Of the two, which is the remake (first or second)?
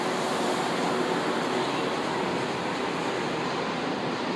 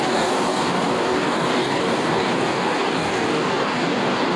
second